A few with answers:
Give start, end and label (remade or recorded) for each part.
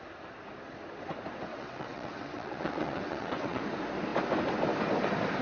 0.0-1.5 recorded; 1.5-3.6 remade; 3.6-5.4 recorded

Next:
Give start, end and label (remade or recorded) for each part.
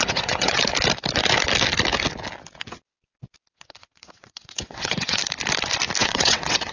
0.0-0.6 remade; 0.6-3.5 recorded; 3.5-5.2 remade; 5.2-6.0 recorded; 6.0-6.7 remade